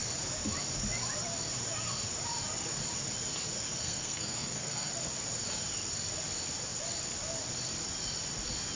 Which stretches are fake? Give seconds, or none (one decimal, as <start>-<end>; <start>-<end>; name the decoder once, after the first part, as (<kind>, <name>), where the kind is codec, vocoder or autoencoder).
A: 3.8-4.9 (codec, SNAC)